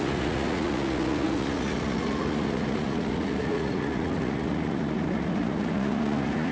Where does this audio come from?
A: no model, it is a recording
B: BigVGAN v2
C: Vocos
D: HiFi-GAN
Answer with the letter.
C